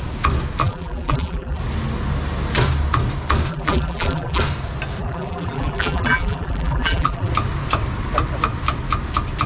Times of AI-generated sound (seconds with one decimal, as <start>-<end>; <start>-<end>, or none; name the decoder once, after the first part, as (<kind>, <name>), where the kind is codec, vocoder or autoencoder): 0.6-1.6 (vocoder, BigVGAN v2); 3.5-4.4; 5.0-7.3